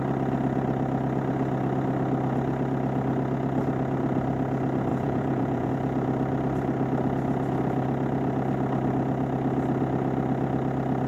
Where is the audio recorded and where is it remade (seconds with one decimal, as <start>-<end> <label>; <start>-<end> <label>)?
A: 0.0-4.9 recorded; 4.9-5.7 remade; 5.7-11.1 recorded